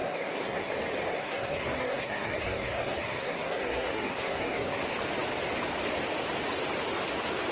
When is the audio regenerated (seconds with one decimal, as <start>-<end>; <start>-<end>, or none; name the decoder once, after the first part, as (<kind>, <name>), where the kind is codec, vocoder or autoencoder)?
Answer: 0.0-0.7 (codec, SNAC); 1.1-4.8